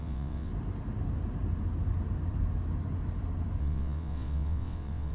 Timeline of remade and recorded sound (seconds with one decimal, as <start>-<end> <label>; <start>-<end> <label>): 0.0-0.5 remade; 0.5-3.6 recorded; 3.6-5.1 remade

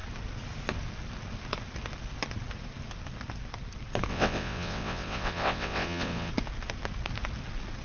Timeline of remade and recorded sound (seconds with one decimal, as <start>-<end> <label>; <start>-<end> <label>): 0.0-4.1 recorded; 4.1-6.3 remade; 6.3-7.8 recorded

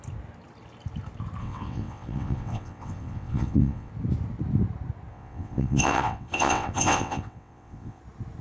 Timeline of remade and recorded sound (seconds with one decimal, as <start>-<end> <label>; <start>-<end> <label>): 0.0-1.4 recorded; 1.4-3.9 remade; 3.9-5.1 recorded; 5.1-8.0 remade; 8.0-8.4 recorded

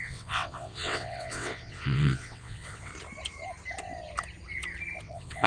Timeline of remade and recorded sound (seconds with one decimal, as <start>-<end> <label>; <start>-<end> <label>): 0.0-2.9 remade; 2.9-5.0 recorded; 5.0-5.5 remade

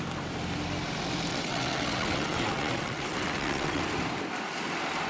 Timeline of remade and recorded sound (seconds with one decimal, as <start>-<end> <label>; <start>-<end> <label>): 0.0-1.3 recorded; 1.3-3.8 remade; 3.8-5.1 recorded

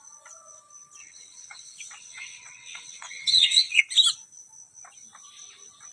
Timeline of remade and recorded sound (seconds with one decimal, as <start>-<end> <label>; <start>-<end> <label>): 0.0-1.0 recorded; 1.0-3.8 remade; 3.8-5.9 recorded

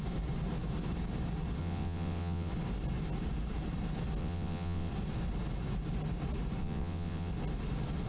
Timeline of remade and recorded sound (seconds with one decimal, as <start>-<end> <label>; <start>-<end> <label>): 0.0-1.6 recorded; 1.6-2.5 remade; 2.5-4.2 recorded; 4.2-4.9 remade; 4.9-6.6 recorded; 6.6-7.3 remade; 7.3-8.1 recorded

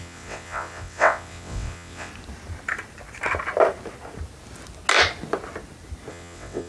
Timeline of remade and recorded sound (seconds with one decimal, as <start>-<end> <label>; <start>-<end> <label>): 0.0-2.1 remade; 2.1-6.1 recorded; 6.1-6.7 remade